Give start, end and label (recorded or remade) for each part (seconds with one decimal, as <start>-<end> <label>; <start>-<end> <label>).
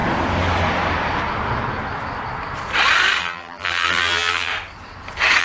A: 0.0-3.2 recorded; 3.2-4.5 remade; 4.5-5.4 recorded